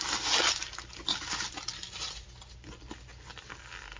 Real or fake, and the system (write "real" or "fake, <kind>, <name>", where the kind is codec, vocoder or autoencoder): real